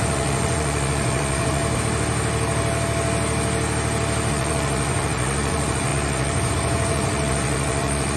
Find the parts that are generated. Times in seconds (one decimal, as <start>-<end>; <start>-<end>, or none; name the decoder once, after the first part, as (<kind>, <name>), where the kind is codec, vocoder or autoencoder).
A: 0.0-1.6 (vocoder, Vocos); 4.3-8.2